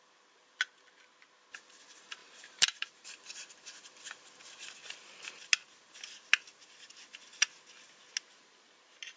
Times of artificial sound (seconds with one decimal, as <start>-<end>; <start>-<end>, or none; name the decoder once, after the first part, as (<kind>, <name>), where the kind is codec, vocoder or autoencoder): 2.2-3.5 (vocoder, BigVGAN v2)